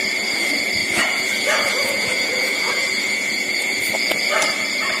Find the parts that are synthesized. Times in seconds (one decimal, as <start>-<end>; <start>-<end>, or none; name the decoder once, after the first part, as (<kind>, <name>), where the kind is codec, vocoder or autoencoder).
0.8-3.8 (vocoder, Vocos)

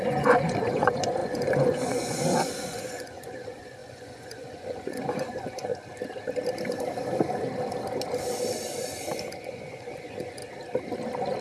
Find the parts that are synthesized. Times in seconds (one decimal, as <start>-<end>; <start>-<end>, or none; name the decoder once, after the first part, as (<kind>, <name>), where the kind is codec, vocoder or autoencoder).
0.0-5.7 (vocoder, Vocos); 9.2-10.4

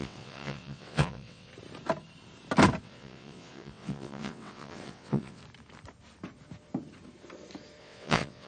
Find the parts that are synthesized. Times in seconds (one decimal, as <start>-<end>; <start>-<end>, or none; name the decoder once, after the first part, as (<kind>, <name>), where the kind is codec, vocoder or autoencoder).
0.0-1.5 (vocoder, WaveNeXt); 2.8-5.4; 7.8-8.5

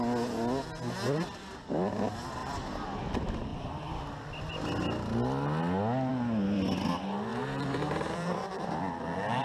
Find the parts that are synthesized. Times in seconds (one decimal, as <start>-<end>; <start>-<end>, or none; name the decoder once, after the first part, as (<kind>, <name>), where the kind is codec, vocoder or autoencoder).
2.4-3.1 (vocoder, BigVGAN v2); 7.3-8.8

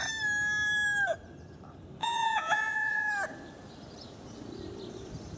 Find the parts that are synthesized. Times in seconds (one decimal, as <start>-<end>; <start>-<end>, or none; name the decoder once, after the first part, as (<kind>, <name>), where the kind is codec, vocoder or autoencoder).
2.0-3.1 (vocoder, Vocos)

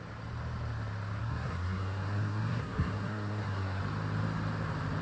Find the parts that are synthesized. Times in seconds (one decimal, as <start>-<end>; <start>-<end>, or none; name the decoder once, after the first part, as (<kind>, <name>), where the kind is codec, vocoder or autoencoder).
1.2-3.8 (codec, SNAC)